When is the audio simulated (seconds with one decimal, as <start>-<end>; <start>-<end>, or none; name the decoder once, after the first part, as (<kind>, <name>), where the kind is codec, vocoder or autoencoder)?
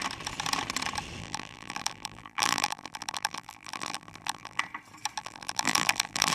1.2-4.6 (vocoder, BigVGAN v2); 5.2-6.3